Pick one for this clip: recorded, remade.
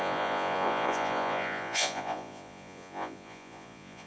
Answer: remade